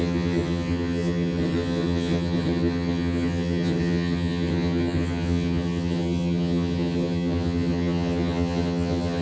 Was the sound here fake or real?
fake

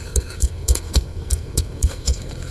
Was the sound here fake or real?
fake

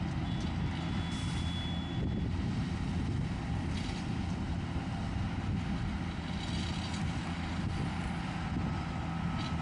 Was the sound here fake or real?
real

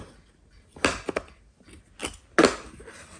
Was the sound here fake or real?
real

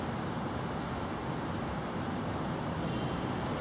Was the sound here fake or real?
real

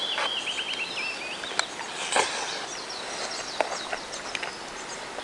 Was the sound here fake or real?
real